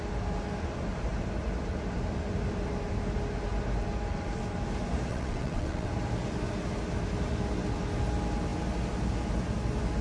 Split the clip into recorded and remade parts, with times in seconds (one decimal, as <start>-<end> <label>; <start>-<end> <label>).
0.0-5.1 recorded; 5.1-5.9 remade; 5.9-10.0 recorded